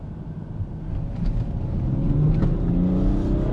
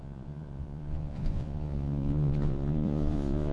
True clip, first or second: first